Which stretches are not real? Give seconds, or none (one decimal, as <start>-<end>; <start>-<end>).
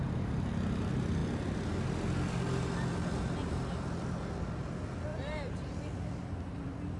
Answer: 0.0-0.5; 5.1-5.7